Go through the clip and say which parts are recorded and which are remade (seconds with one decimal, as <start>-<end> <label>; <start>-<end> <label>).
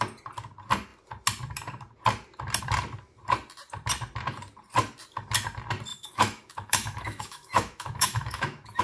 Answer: 0.0-5.9 recorded; 5.9-8.8 remade